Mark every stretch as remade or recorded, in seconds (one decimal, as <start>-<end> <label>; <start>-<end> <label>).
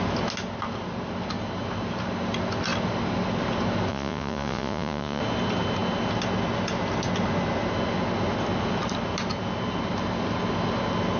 0.0-3.9 recorded; 3.9-5.2 remade; 5.2-11.2 recorded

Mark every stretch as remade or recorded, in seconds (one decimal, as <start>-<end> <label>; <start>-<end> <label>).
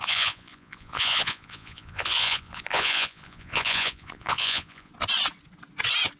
0.0-4.9 remade; 4.9-6.2 recorded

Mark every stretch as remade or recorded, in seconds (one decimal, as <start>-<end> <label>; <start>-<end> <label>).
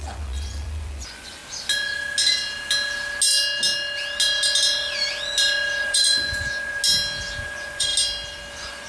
0.0-1.4 remade; 1.4-5.8 recorded; 5.8-6.8 remade; 6.8-7.4 recorded; 7.4-7.9 remade; 7.9-8.5 recorded; 8.5-8.9 remade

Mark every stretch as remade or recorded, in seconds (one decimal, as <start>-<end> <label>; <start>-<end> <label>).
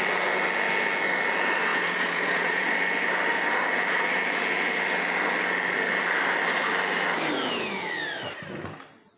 0.0-1.7 recorded; 1.7-2.7 remade; 2.7-9.2 recorded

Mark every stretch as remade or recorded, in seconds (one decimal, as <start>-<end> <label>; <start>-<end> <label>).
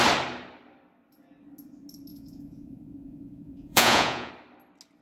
0.0-2.1 recorded; 2.1-4.3 remade; 4.3-5.0 recorded